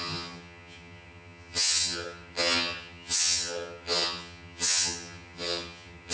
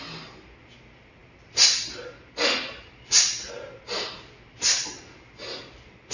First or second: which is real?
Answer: second